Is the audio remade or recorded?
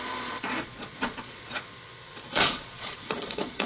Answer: remade